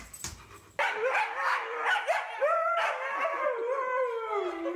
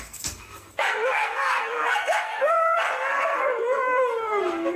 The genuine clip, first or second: first